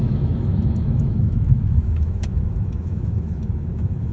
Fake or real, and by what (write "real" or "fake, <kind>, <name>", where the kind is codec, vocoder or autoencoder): fake, autoencoder, DAC-VAE